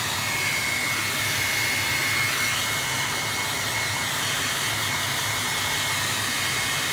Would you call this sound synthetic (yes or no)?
no